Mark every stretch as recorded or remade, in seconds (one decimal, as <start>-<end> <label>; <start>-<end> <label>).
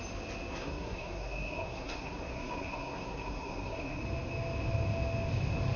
0.0-0.5 recorded; 0.5-4.0 remade; 4.0-5.8 recorded